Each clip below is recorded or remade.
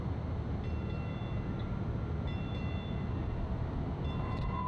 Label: recorded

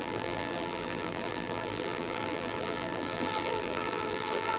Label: remade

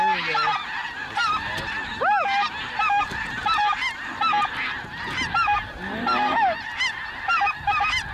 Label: recorded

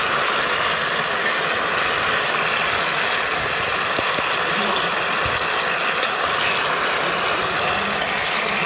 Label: recorded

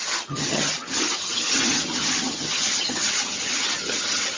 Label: remade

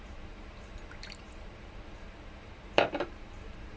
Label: remade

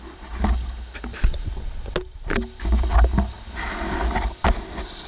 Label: recorded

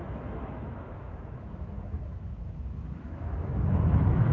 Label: remade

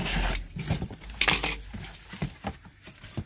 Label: recorded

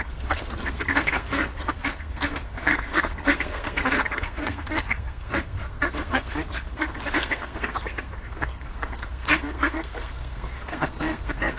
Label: remade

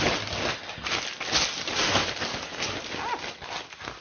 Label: recorded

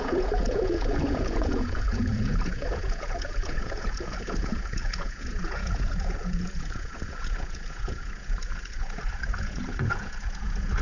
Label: remade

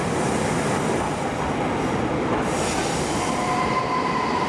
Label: recorded